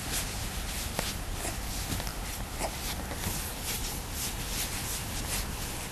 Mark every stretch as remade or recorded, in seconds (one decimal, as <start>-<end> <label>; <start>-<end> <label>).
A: 0.0-5.9 recorded